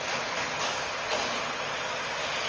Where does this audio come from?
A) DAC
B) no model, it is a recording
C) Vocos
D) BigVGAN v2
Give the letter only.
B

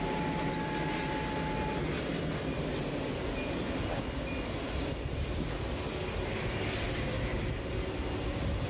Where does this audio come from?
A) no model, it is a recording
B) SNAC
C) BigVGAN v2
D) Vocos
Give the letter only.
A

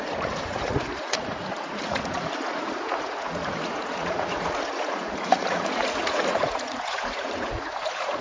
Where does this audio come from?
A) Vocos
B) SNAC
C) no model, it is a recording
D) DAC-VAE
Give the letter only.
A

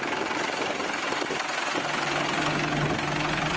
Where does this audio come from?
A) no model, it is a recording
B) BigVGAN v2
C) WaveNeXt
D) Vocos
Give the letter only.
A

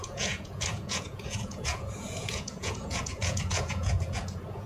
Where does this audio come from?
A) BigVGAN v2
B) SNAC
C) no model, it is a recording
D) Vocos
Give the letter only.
D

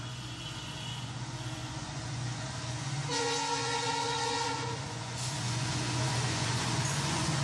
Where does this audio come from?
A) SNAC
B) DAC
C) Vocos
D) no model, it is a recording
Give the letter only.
C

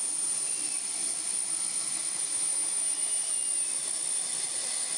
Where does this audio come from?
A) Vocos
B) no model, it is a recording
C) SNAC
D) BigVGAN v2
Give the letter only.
B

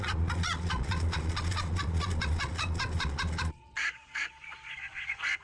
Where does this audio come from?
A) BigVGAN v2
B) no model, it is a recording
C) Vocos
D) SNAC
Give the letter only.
C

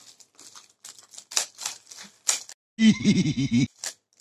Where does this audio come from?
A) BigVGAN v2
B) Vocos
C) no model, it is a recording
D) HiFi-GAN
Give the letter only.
C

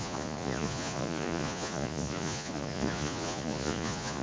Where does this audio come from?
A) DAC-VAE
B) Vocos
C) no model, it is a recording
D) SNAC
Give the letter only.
B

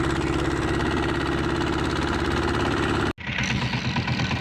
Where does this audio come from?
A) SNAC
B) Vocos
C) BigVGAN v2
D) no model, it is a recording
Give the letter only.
D